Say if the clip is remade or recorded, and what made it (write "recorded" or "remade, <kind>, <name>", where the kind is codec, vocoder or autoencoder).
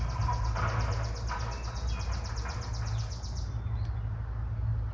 recorded